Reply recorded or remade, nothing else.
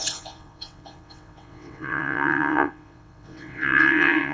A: remade